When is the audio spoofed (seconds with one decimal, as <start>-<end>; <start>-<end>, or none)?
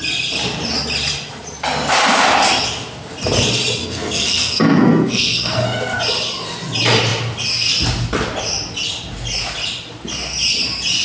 3.8-6.0